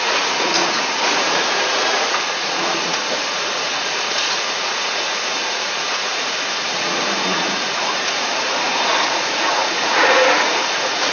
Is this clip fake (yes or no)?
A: yes